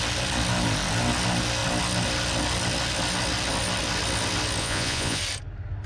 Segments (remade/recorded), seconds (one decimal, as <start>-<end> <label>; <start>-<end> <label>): 0.0-4.6 recorded; 4.6-5.2 remade; 5.2-5.9 recorded